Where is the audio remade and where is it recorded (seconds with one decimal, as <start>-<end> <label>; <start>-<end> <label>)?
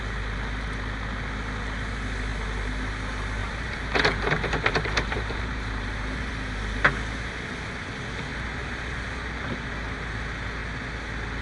0.0-3.4 recorded; 3.4-6.3 remade; 6.3-8.3 recorded; 8.3-9.5 remade; 9.5-11.4 recorded